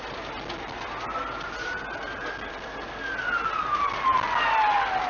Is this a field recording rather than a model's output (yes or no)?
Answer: yes